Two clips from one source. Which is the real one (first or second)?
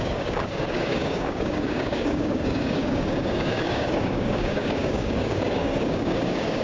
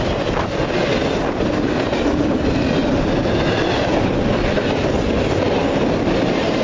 second